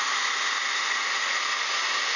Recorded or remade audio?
recorded